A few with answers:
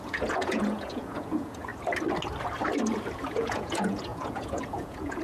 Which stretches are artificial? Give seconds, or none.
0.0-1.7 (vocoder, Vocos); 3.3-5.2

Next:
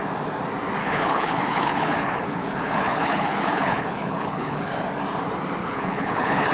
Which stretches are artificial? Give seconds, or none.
0.8-4.7 (codec, HILCodec); 5.6-6.5

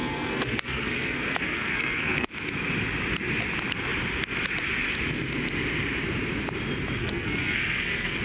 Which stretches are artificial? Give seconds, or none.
0.0-2.3 (codec, SNAC); 7.0-8.2

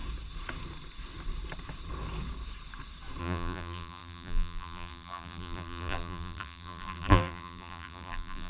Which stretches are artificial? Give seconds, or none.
3.2-8.5 (vocoder, BigVGAN v2)

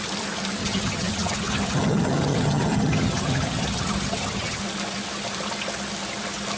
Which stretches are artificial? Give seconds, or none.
0.6-4.6 (vocoder, HiFi-GAN)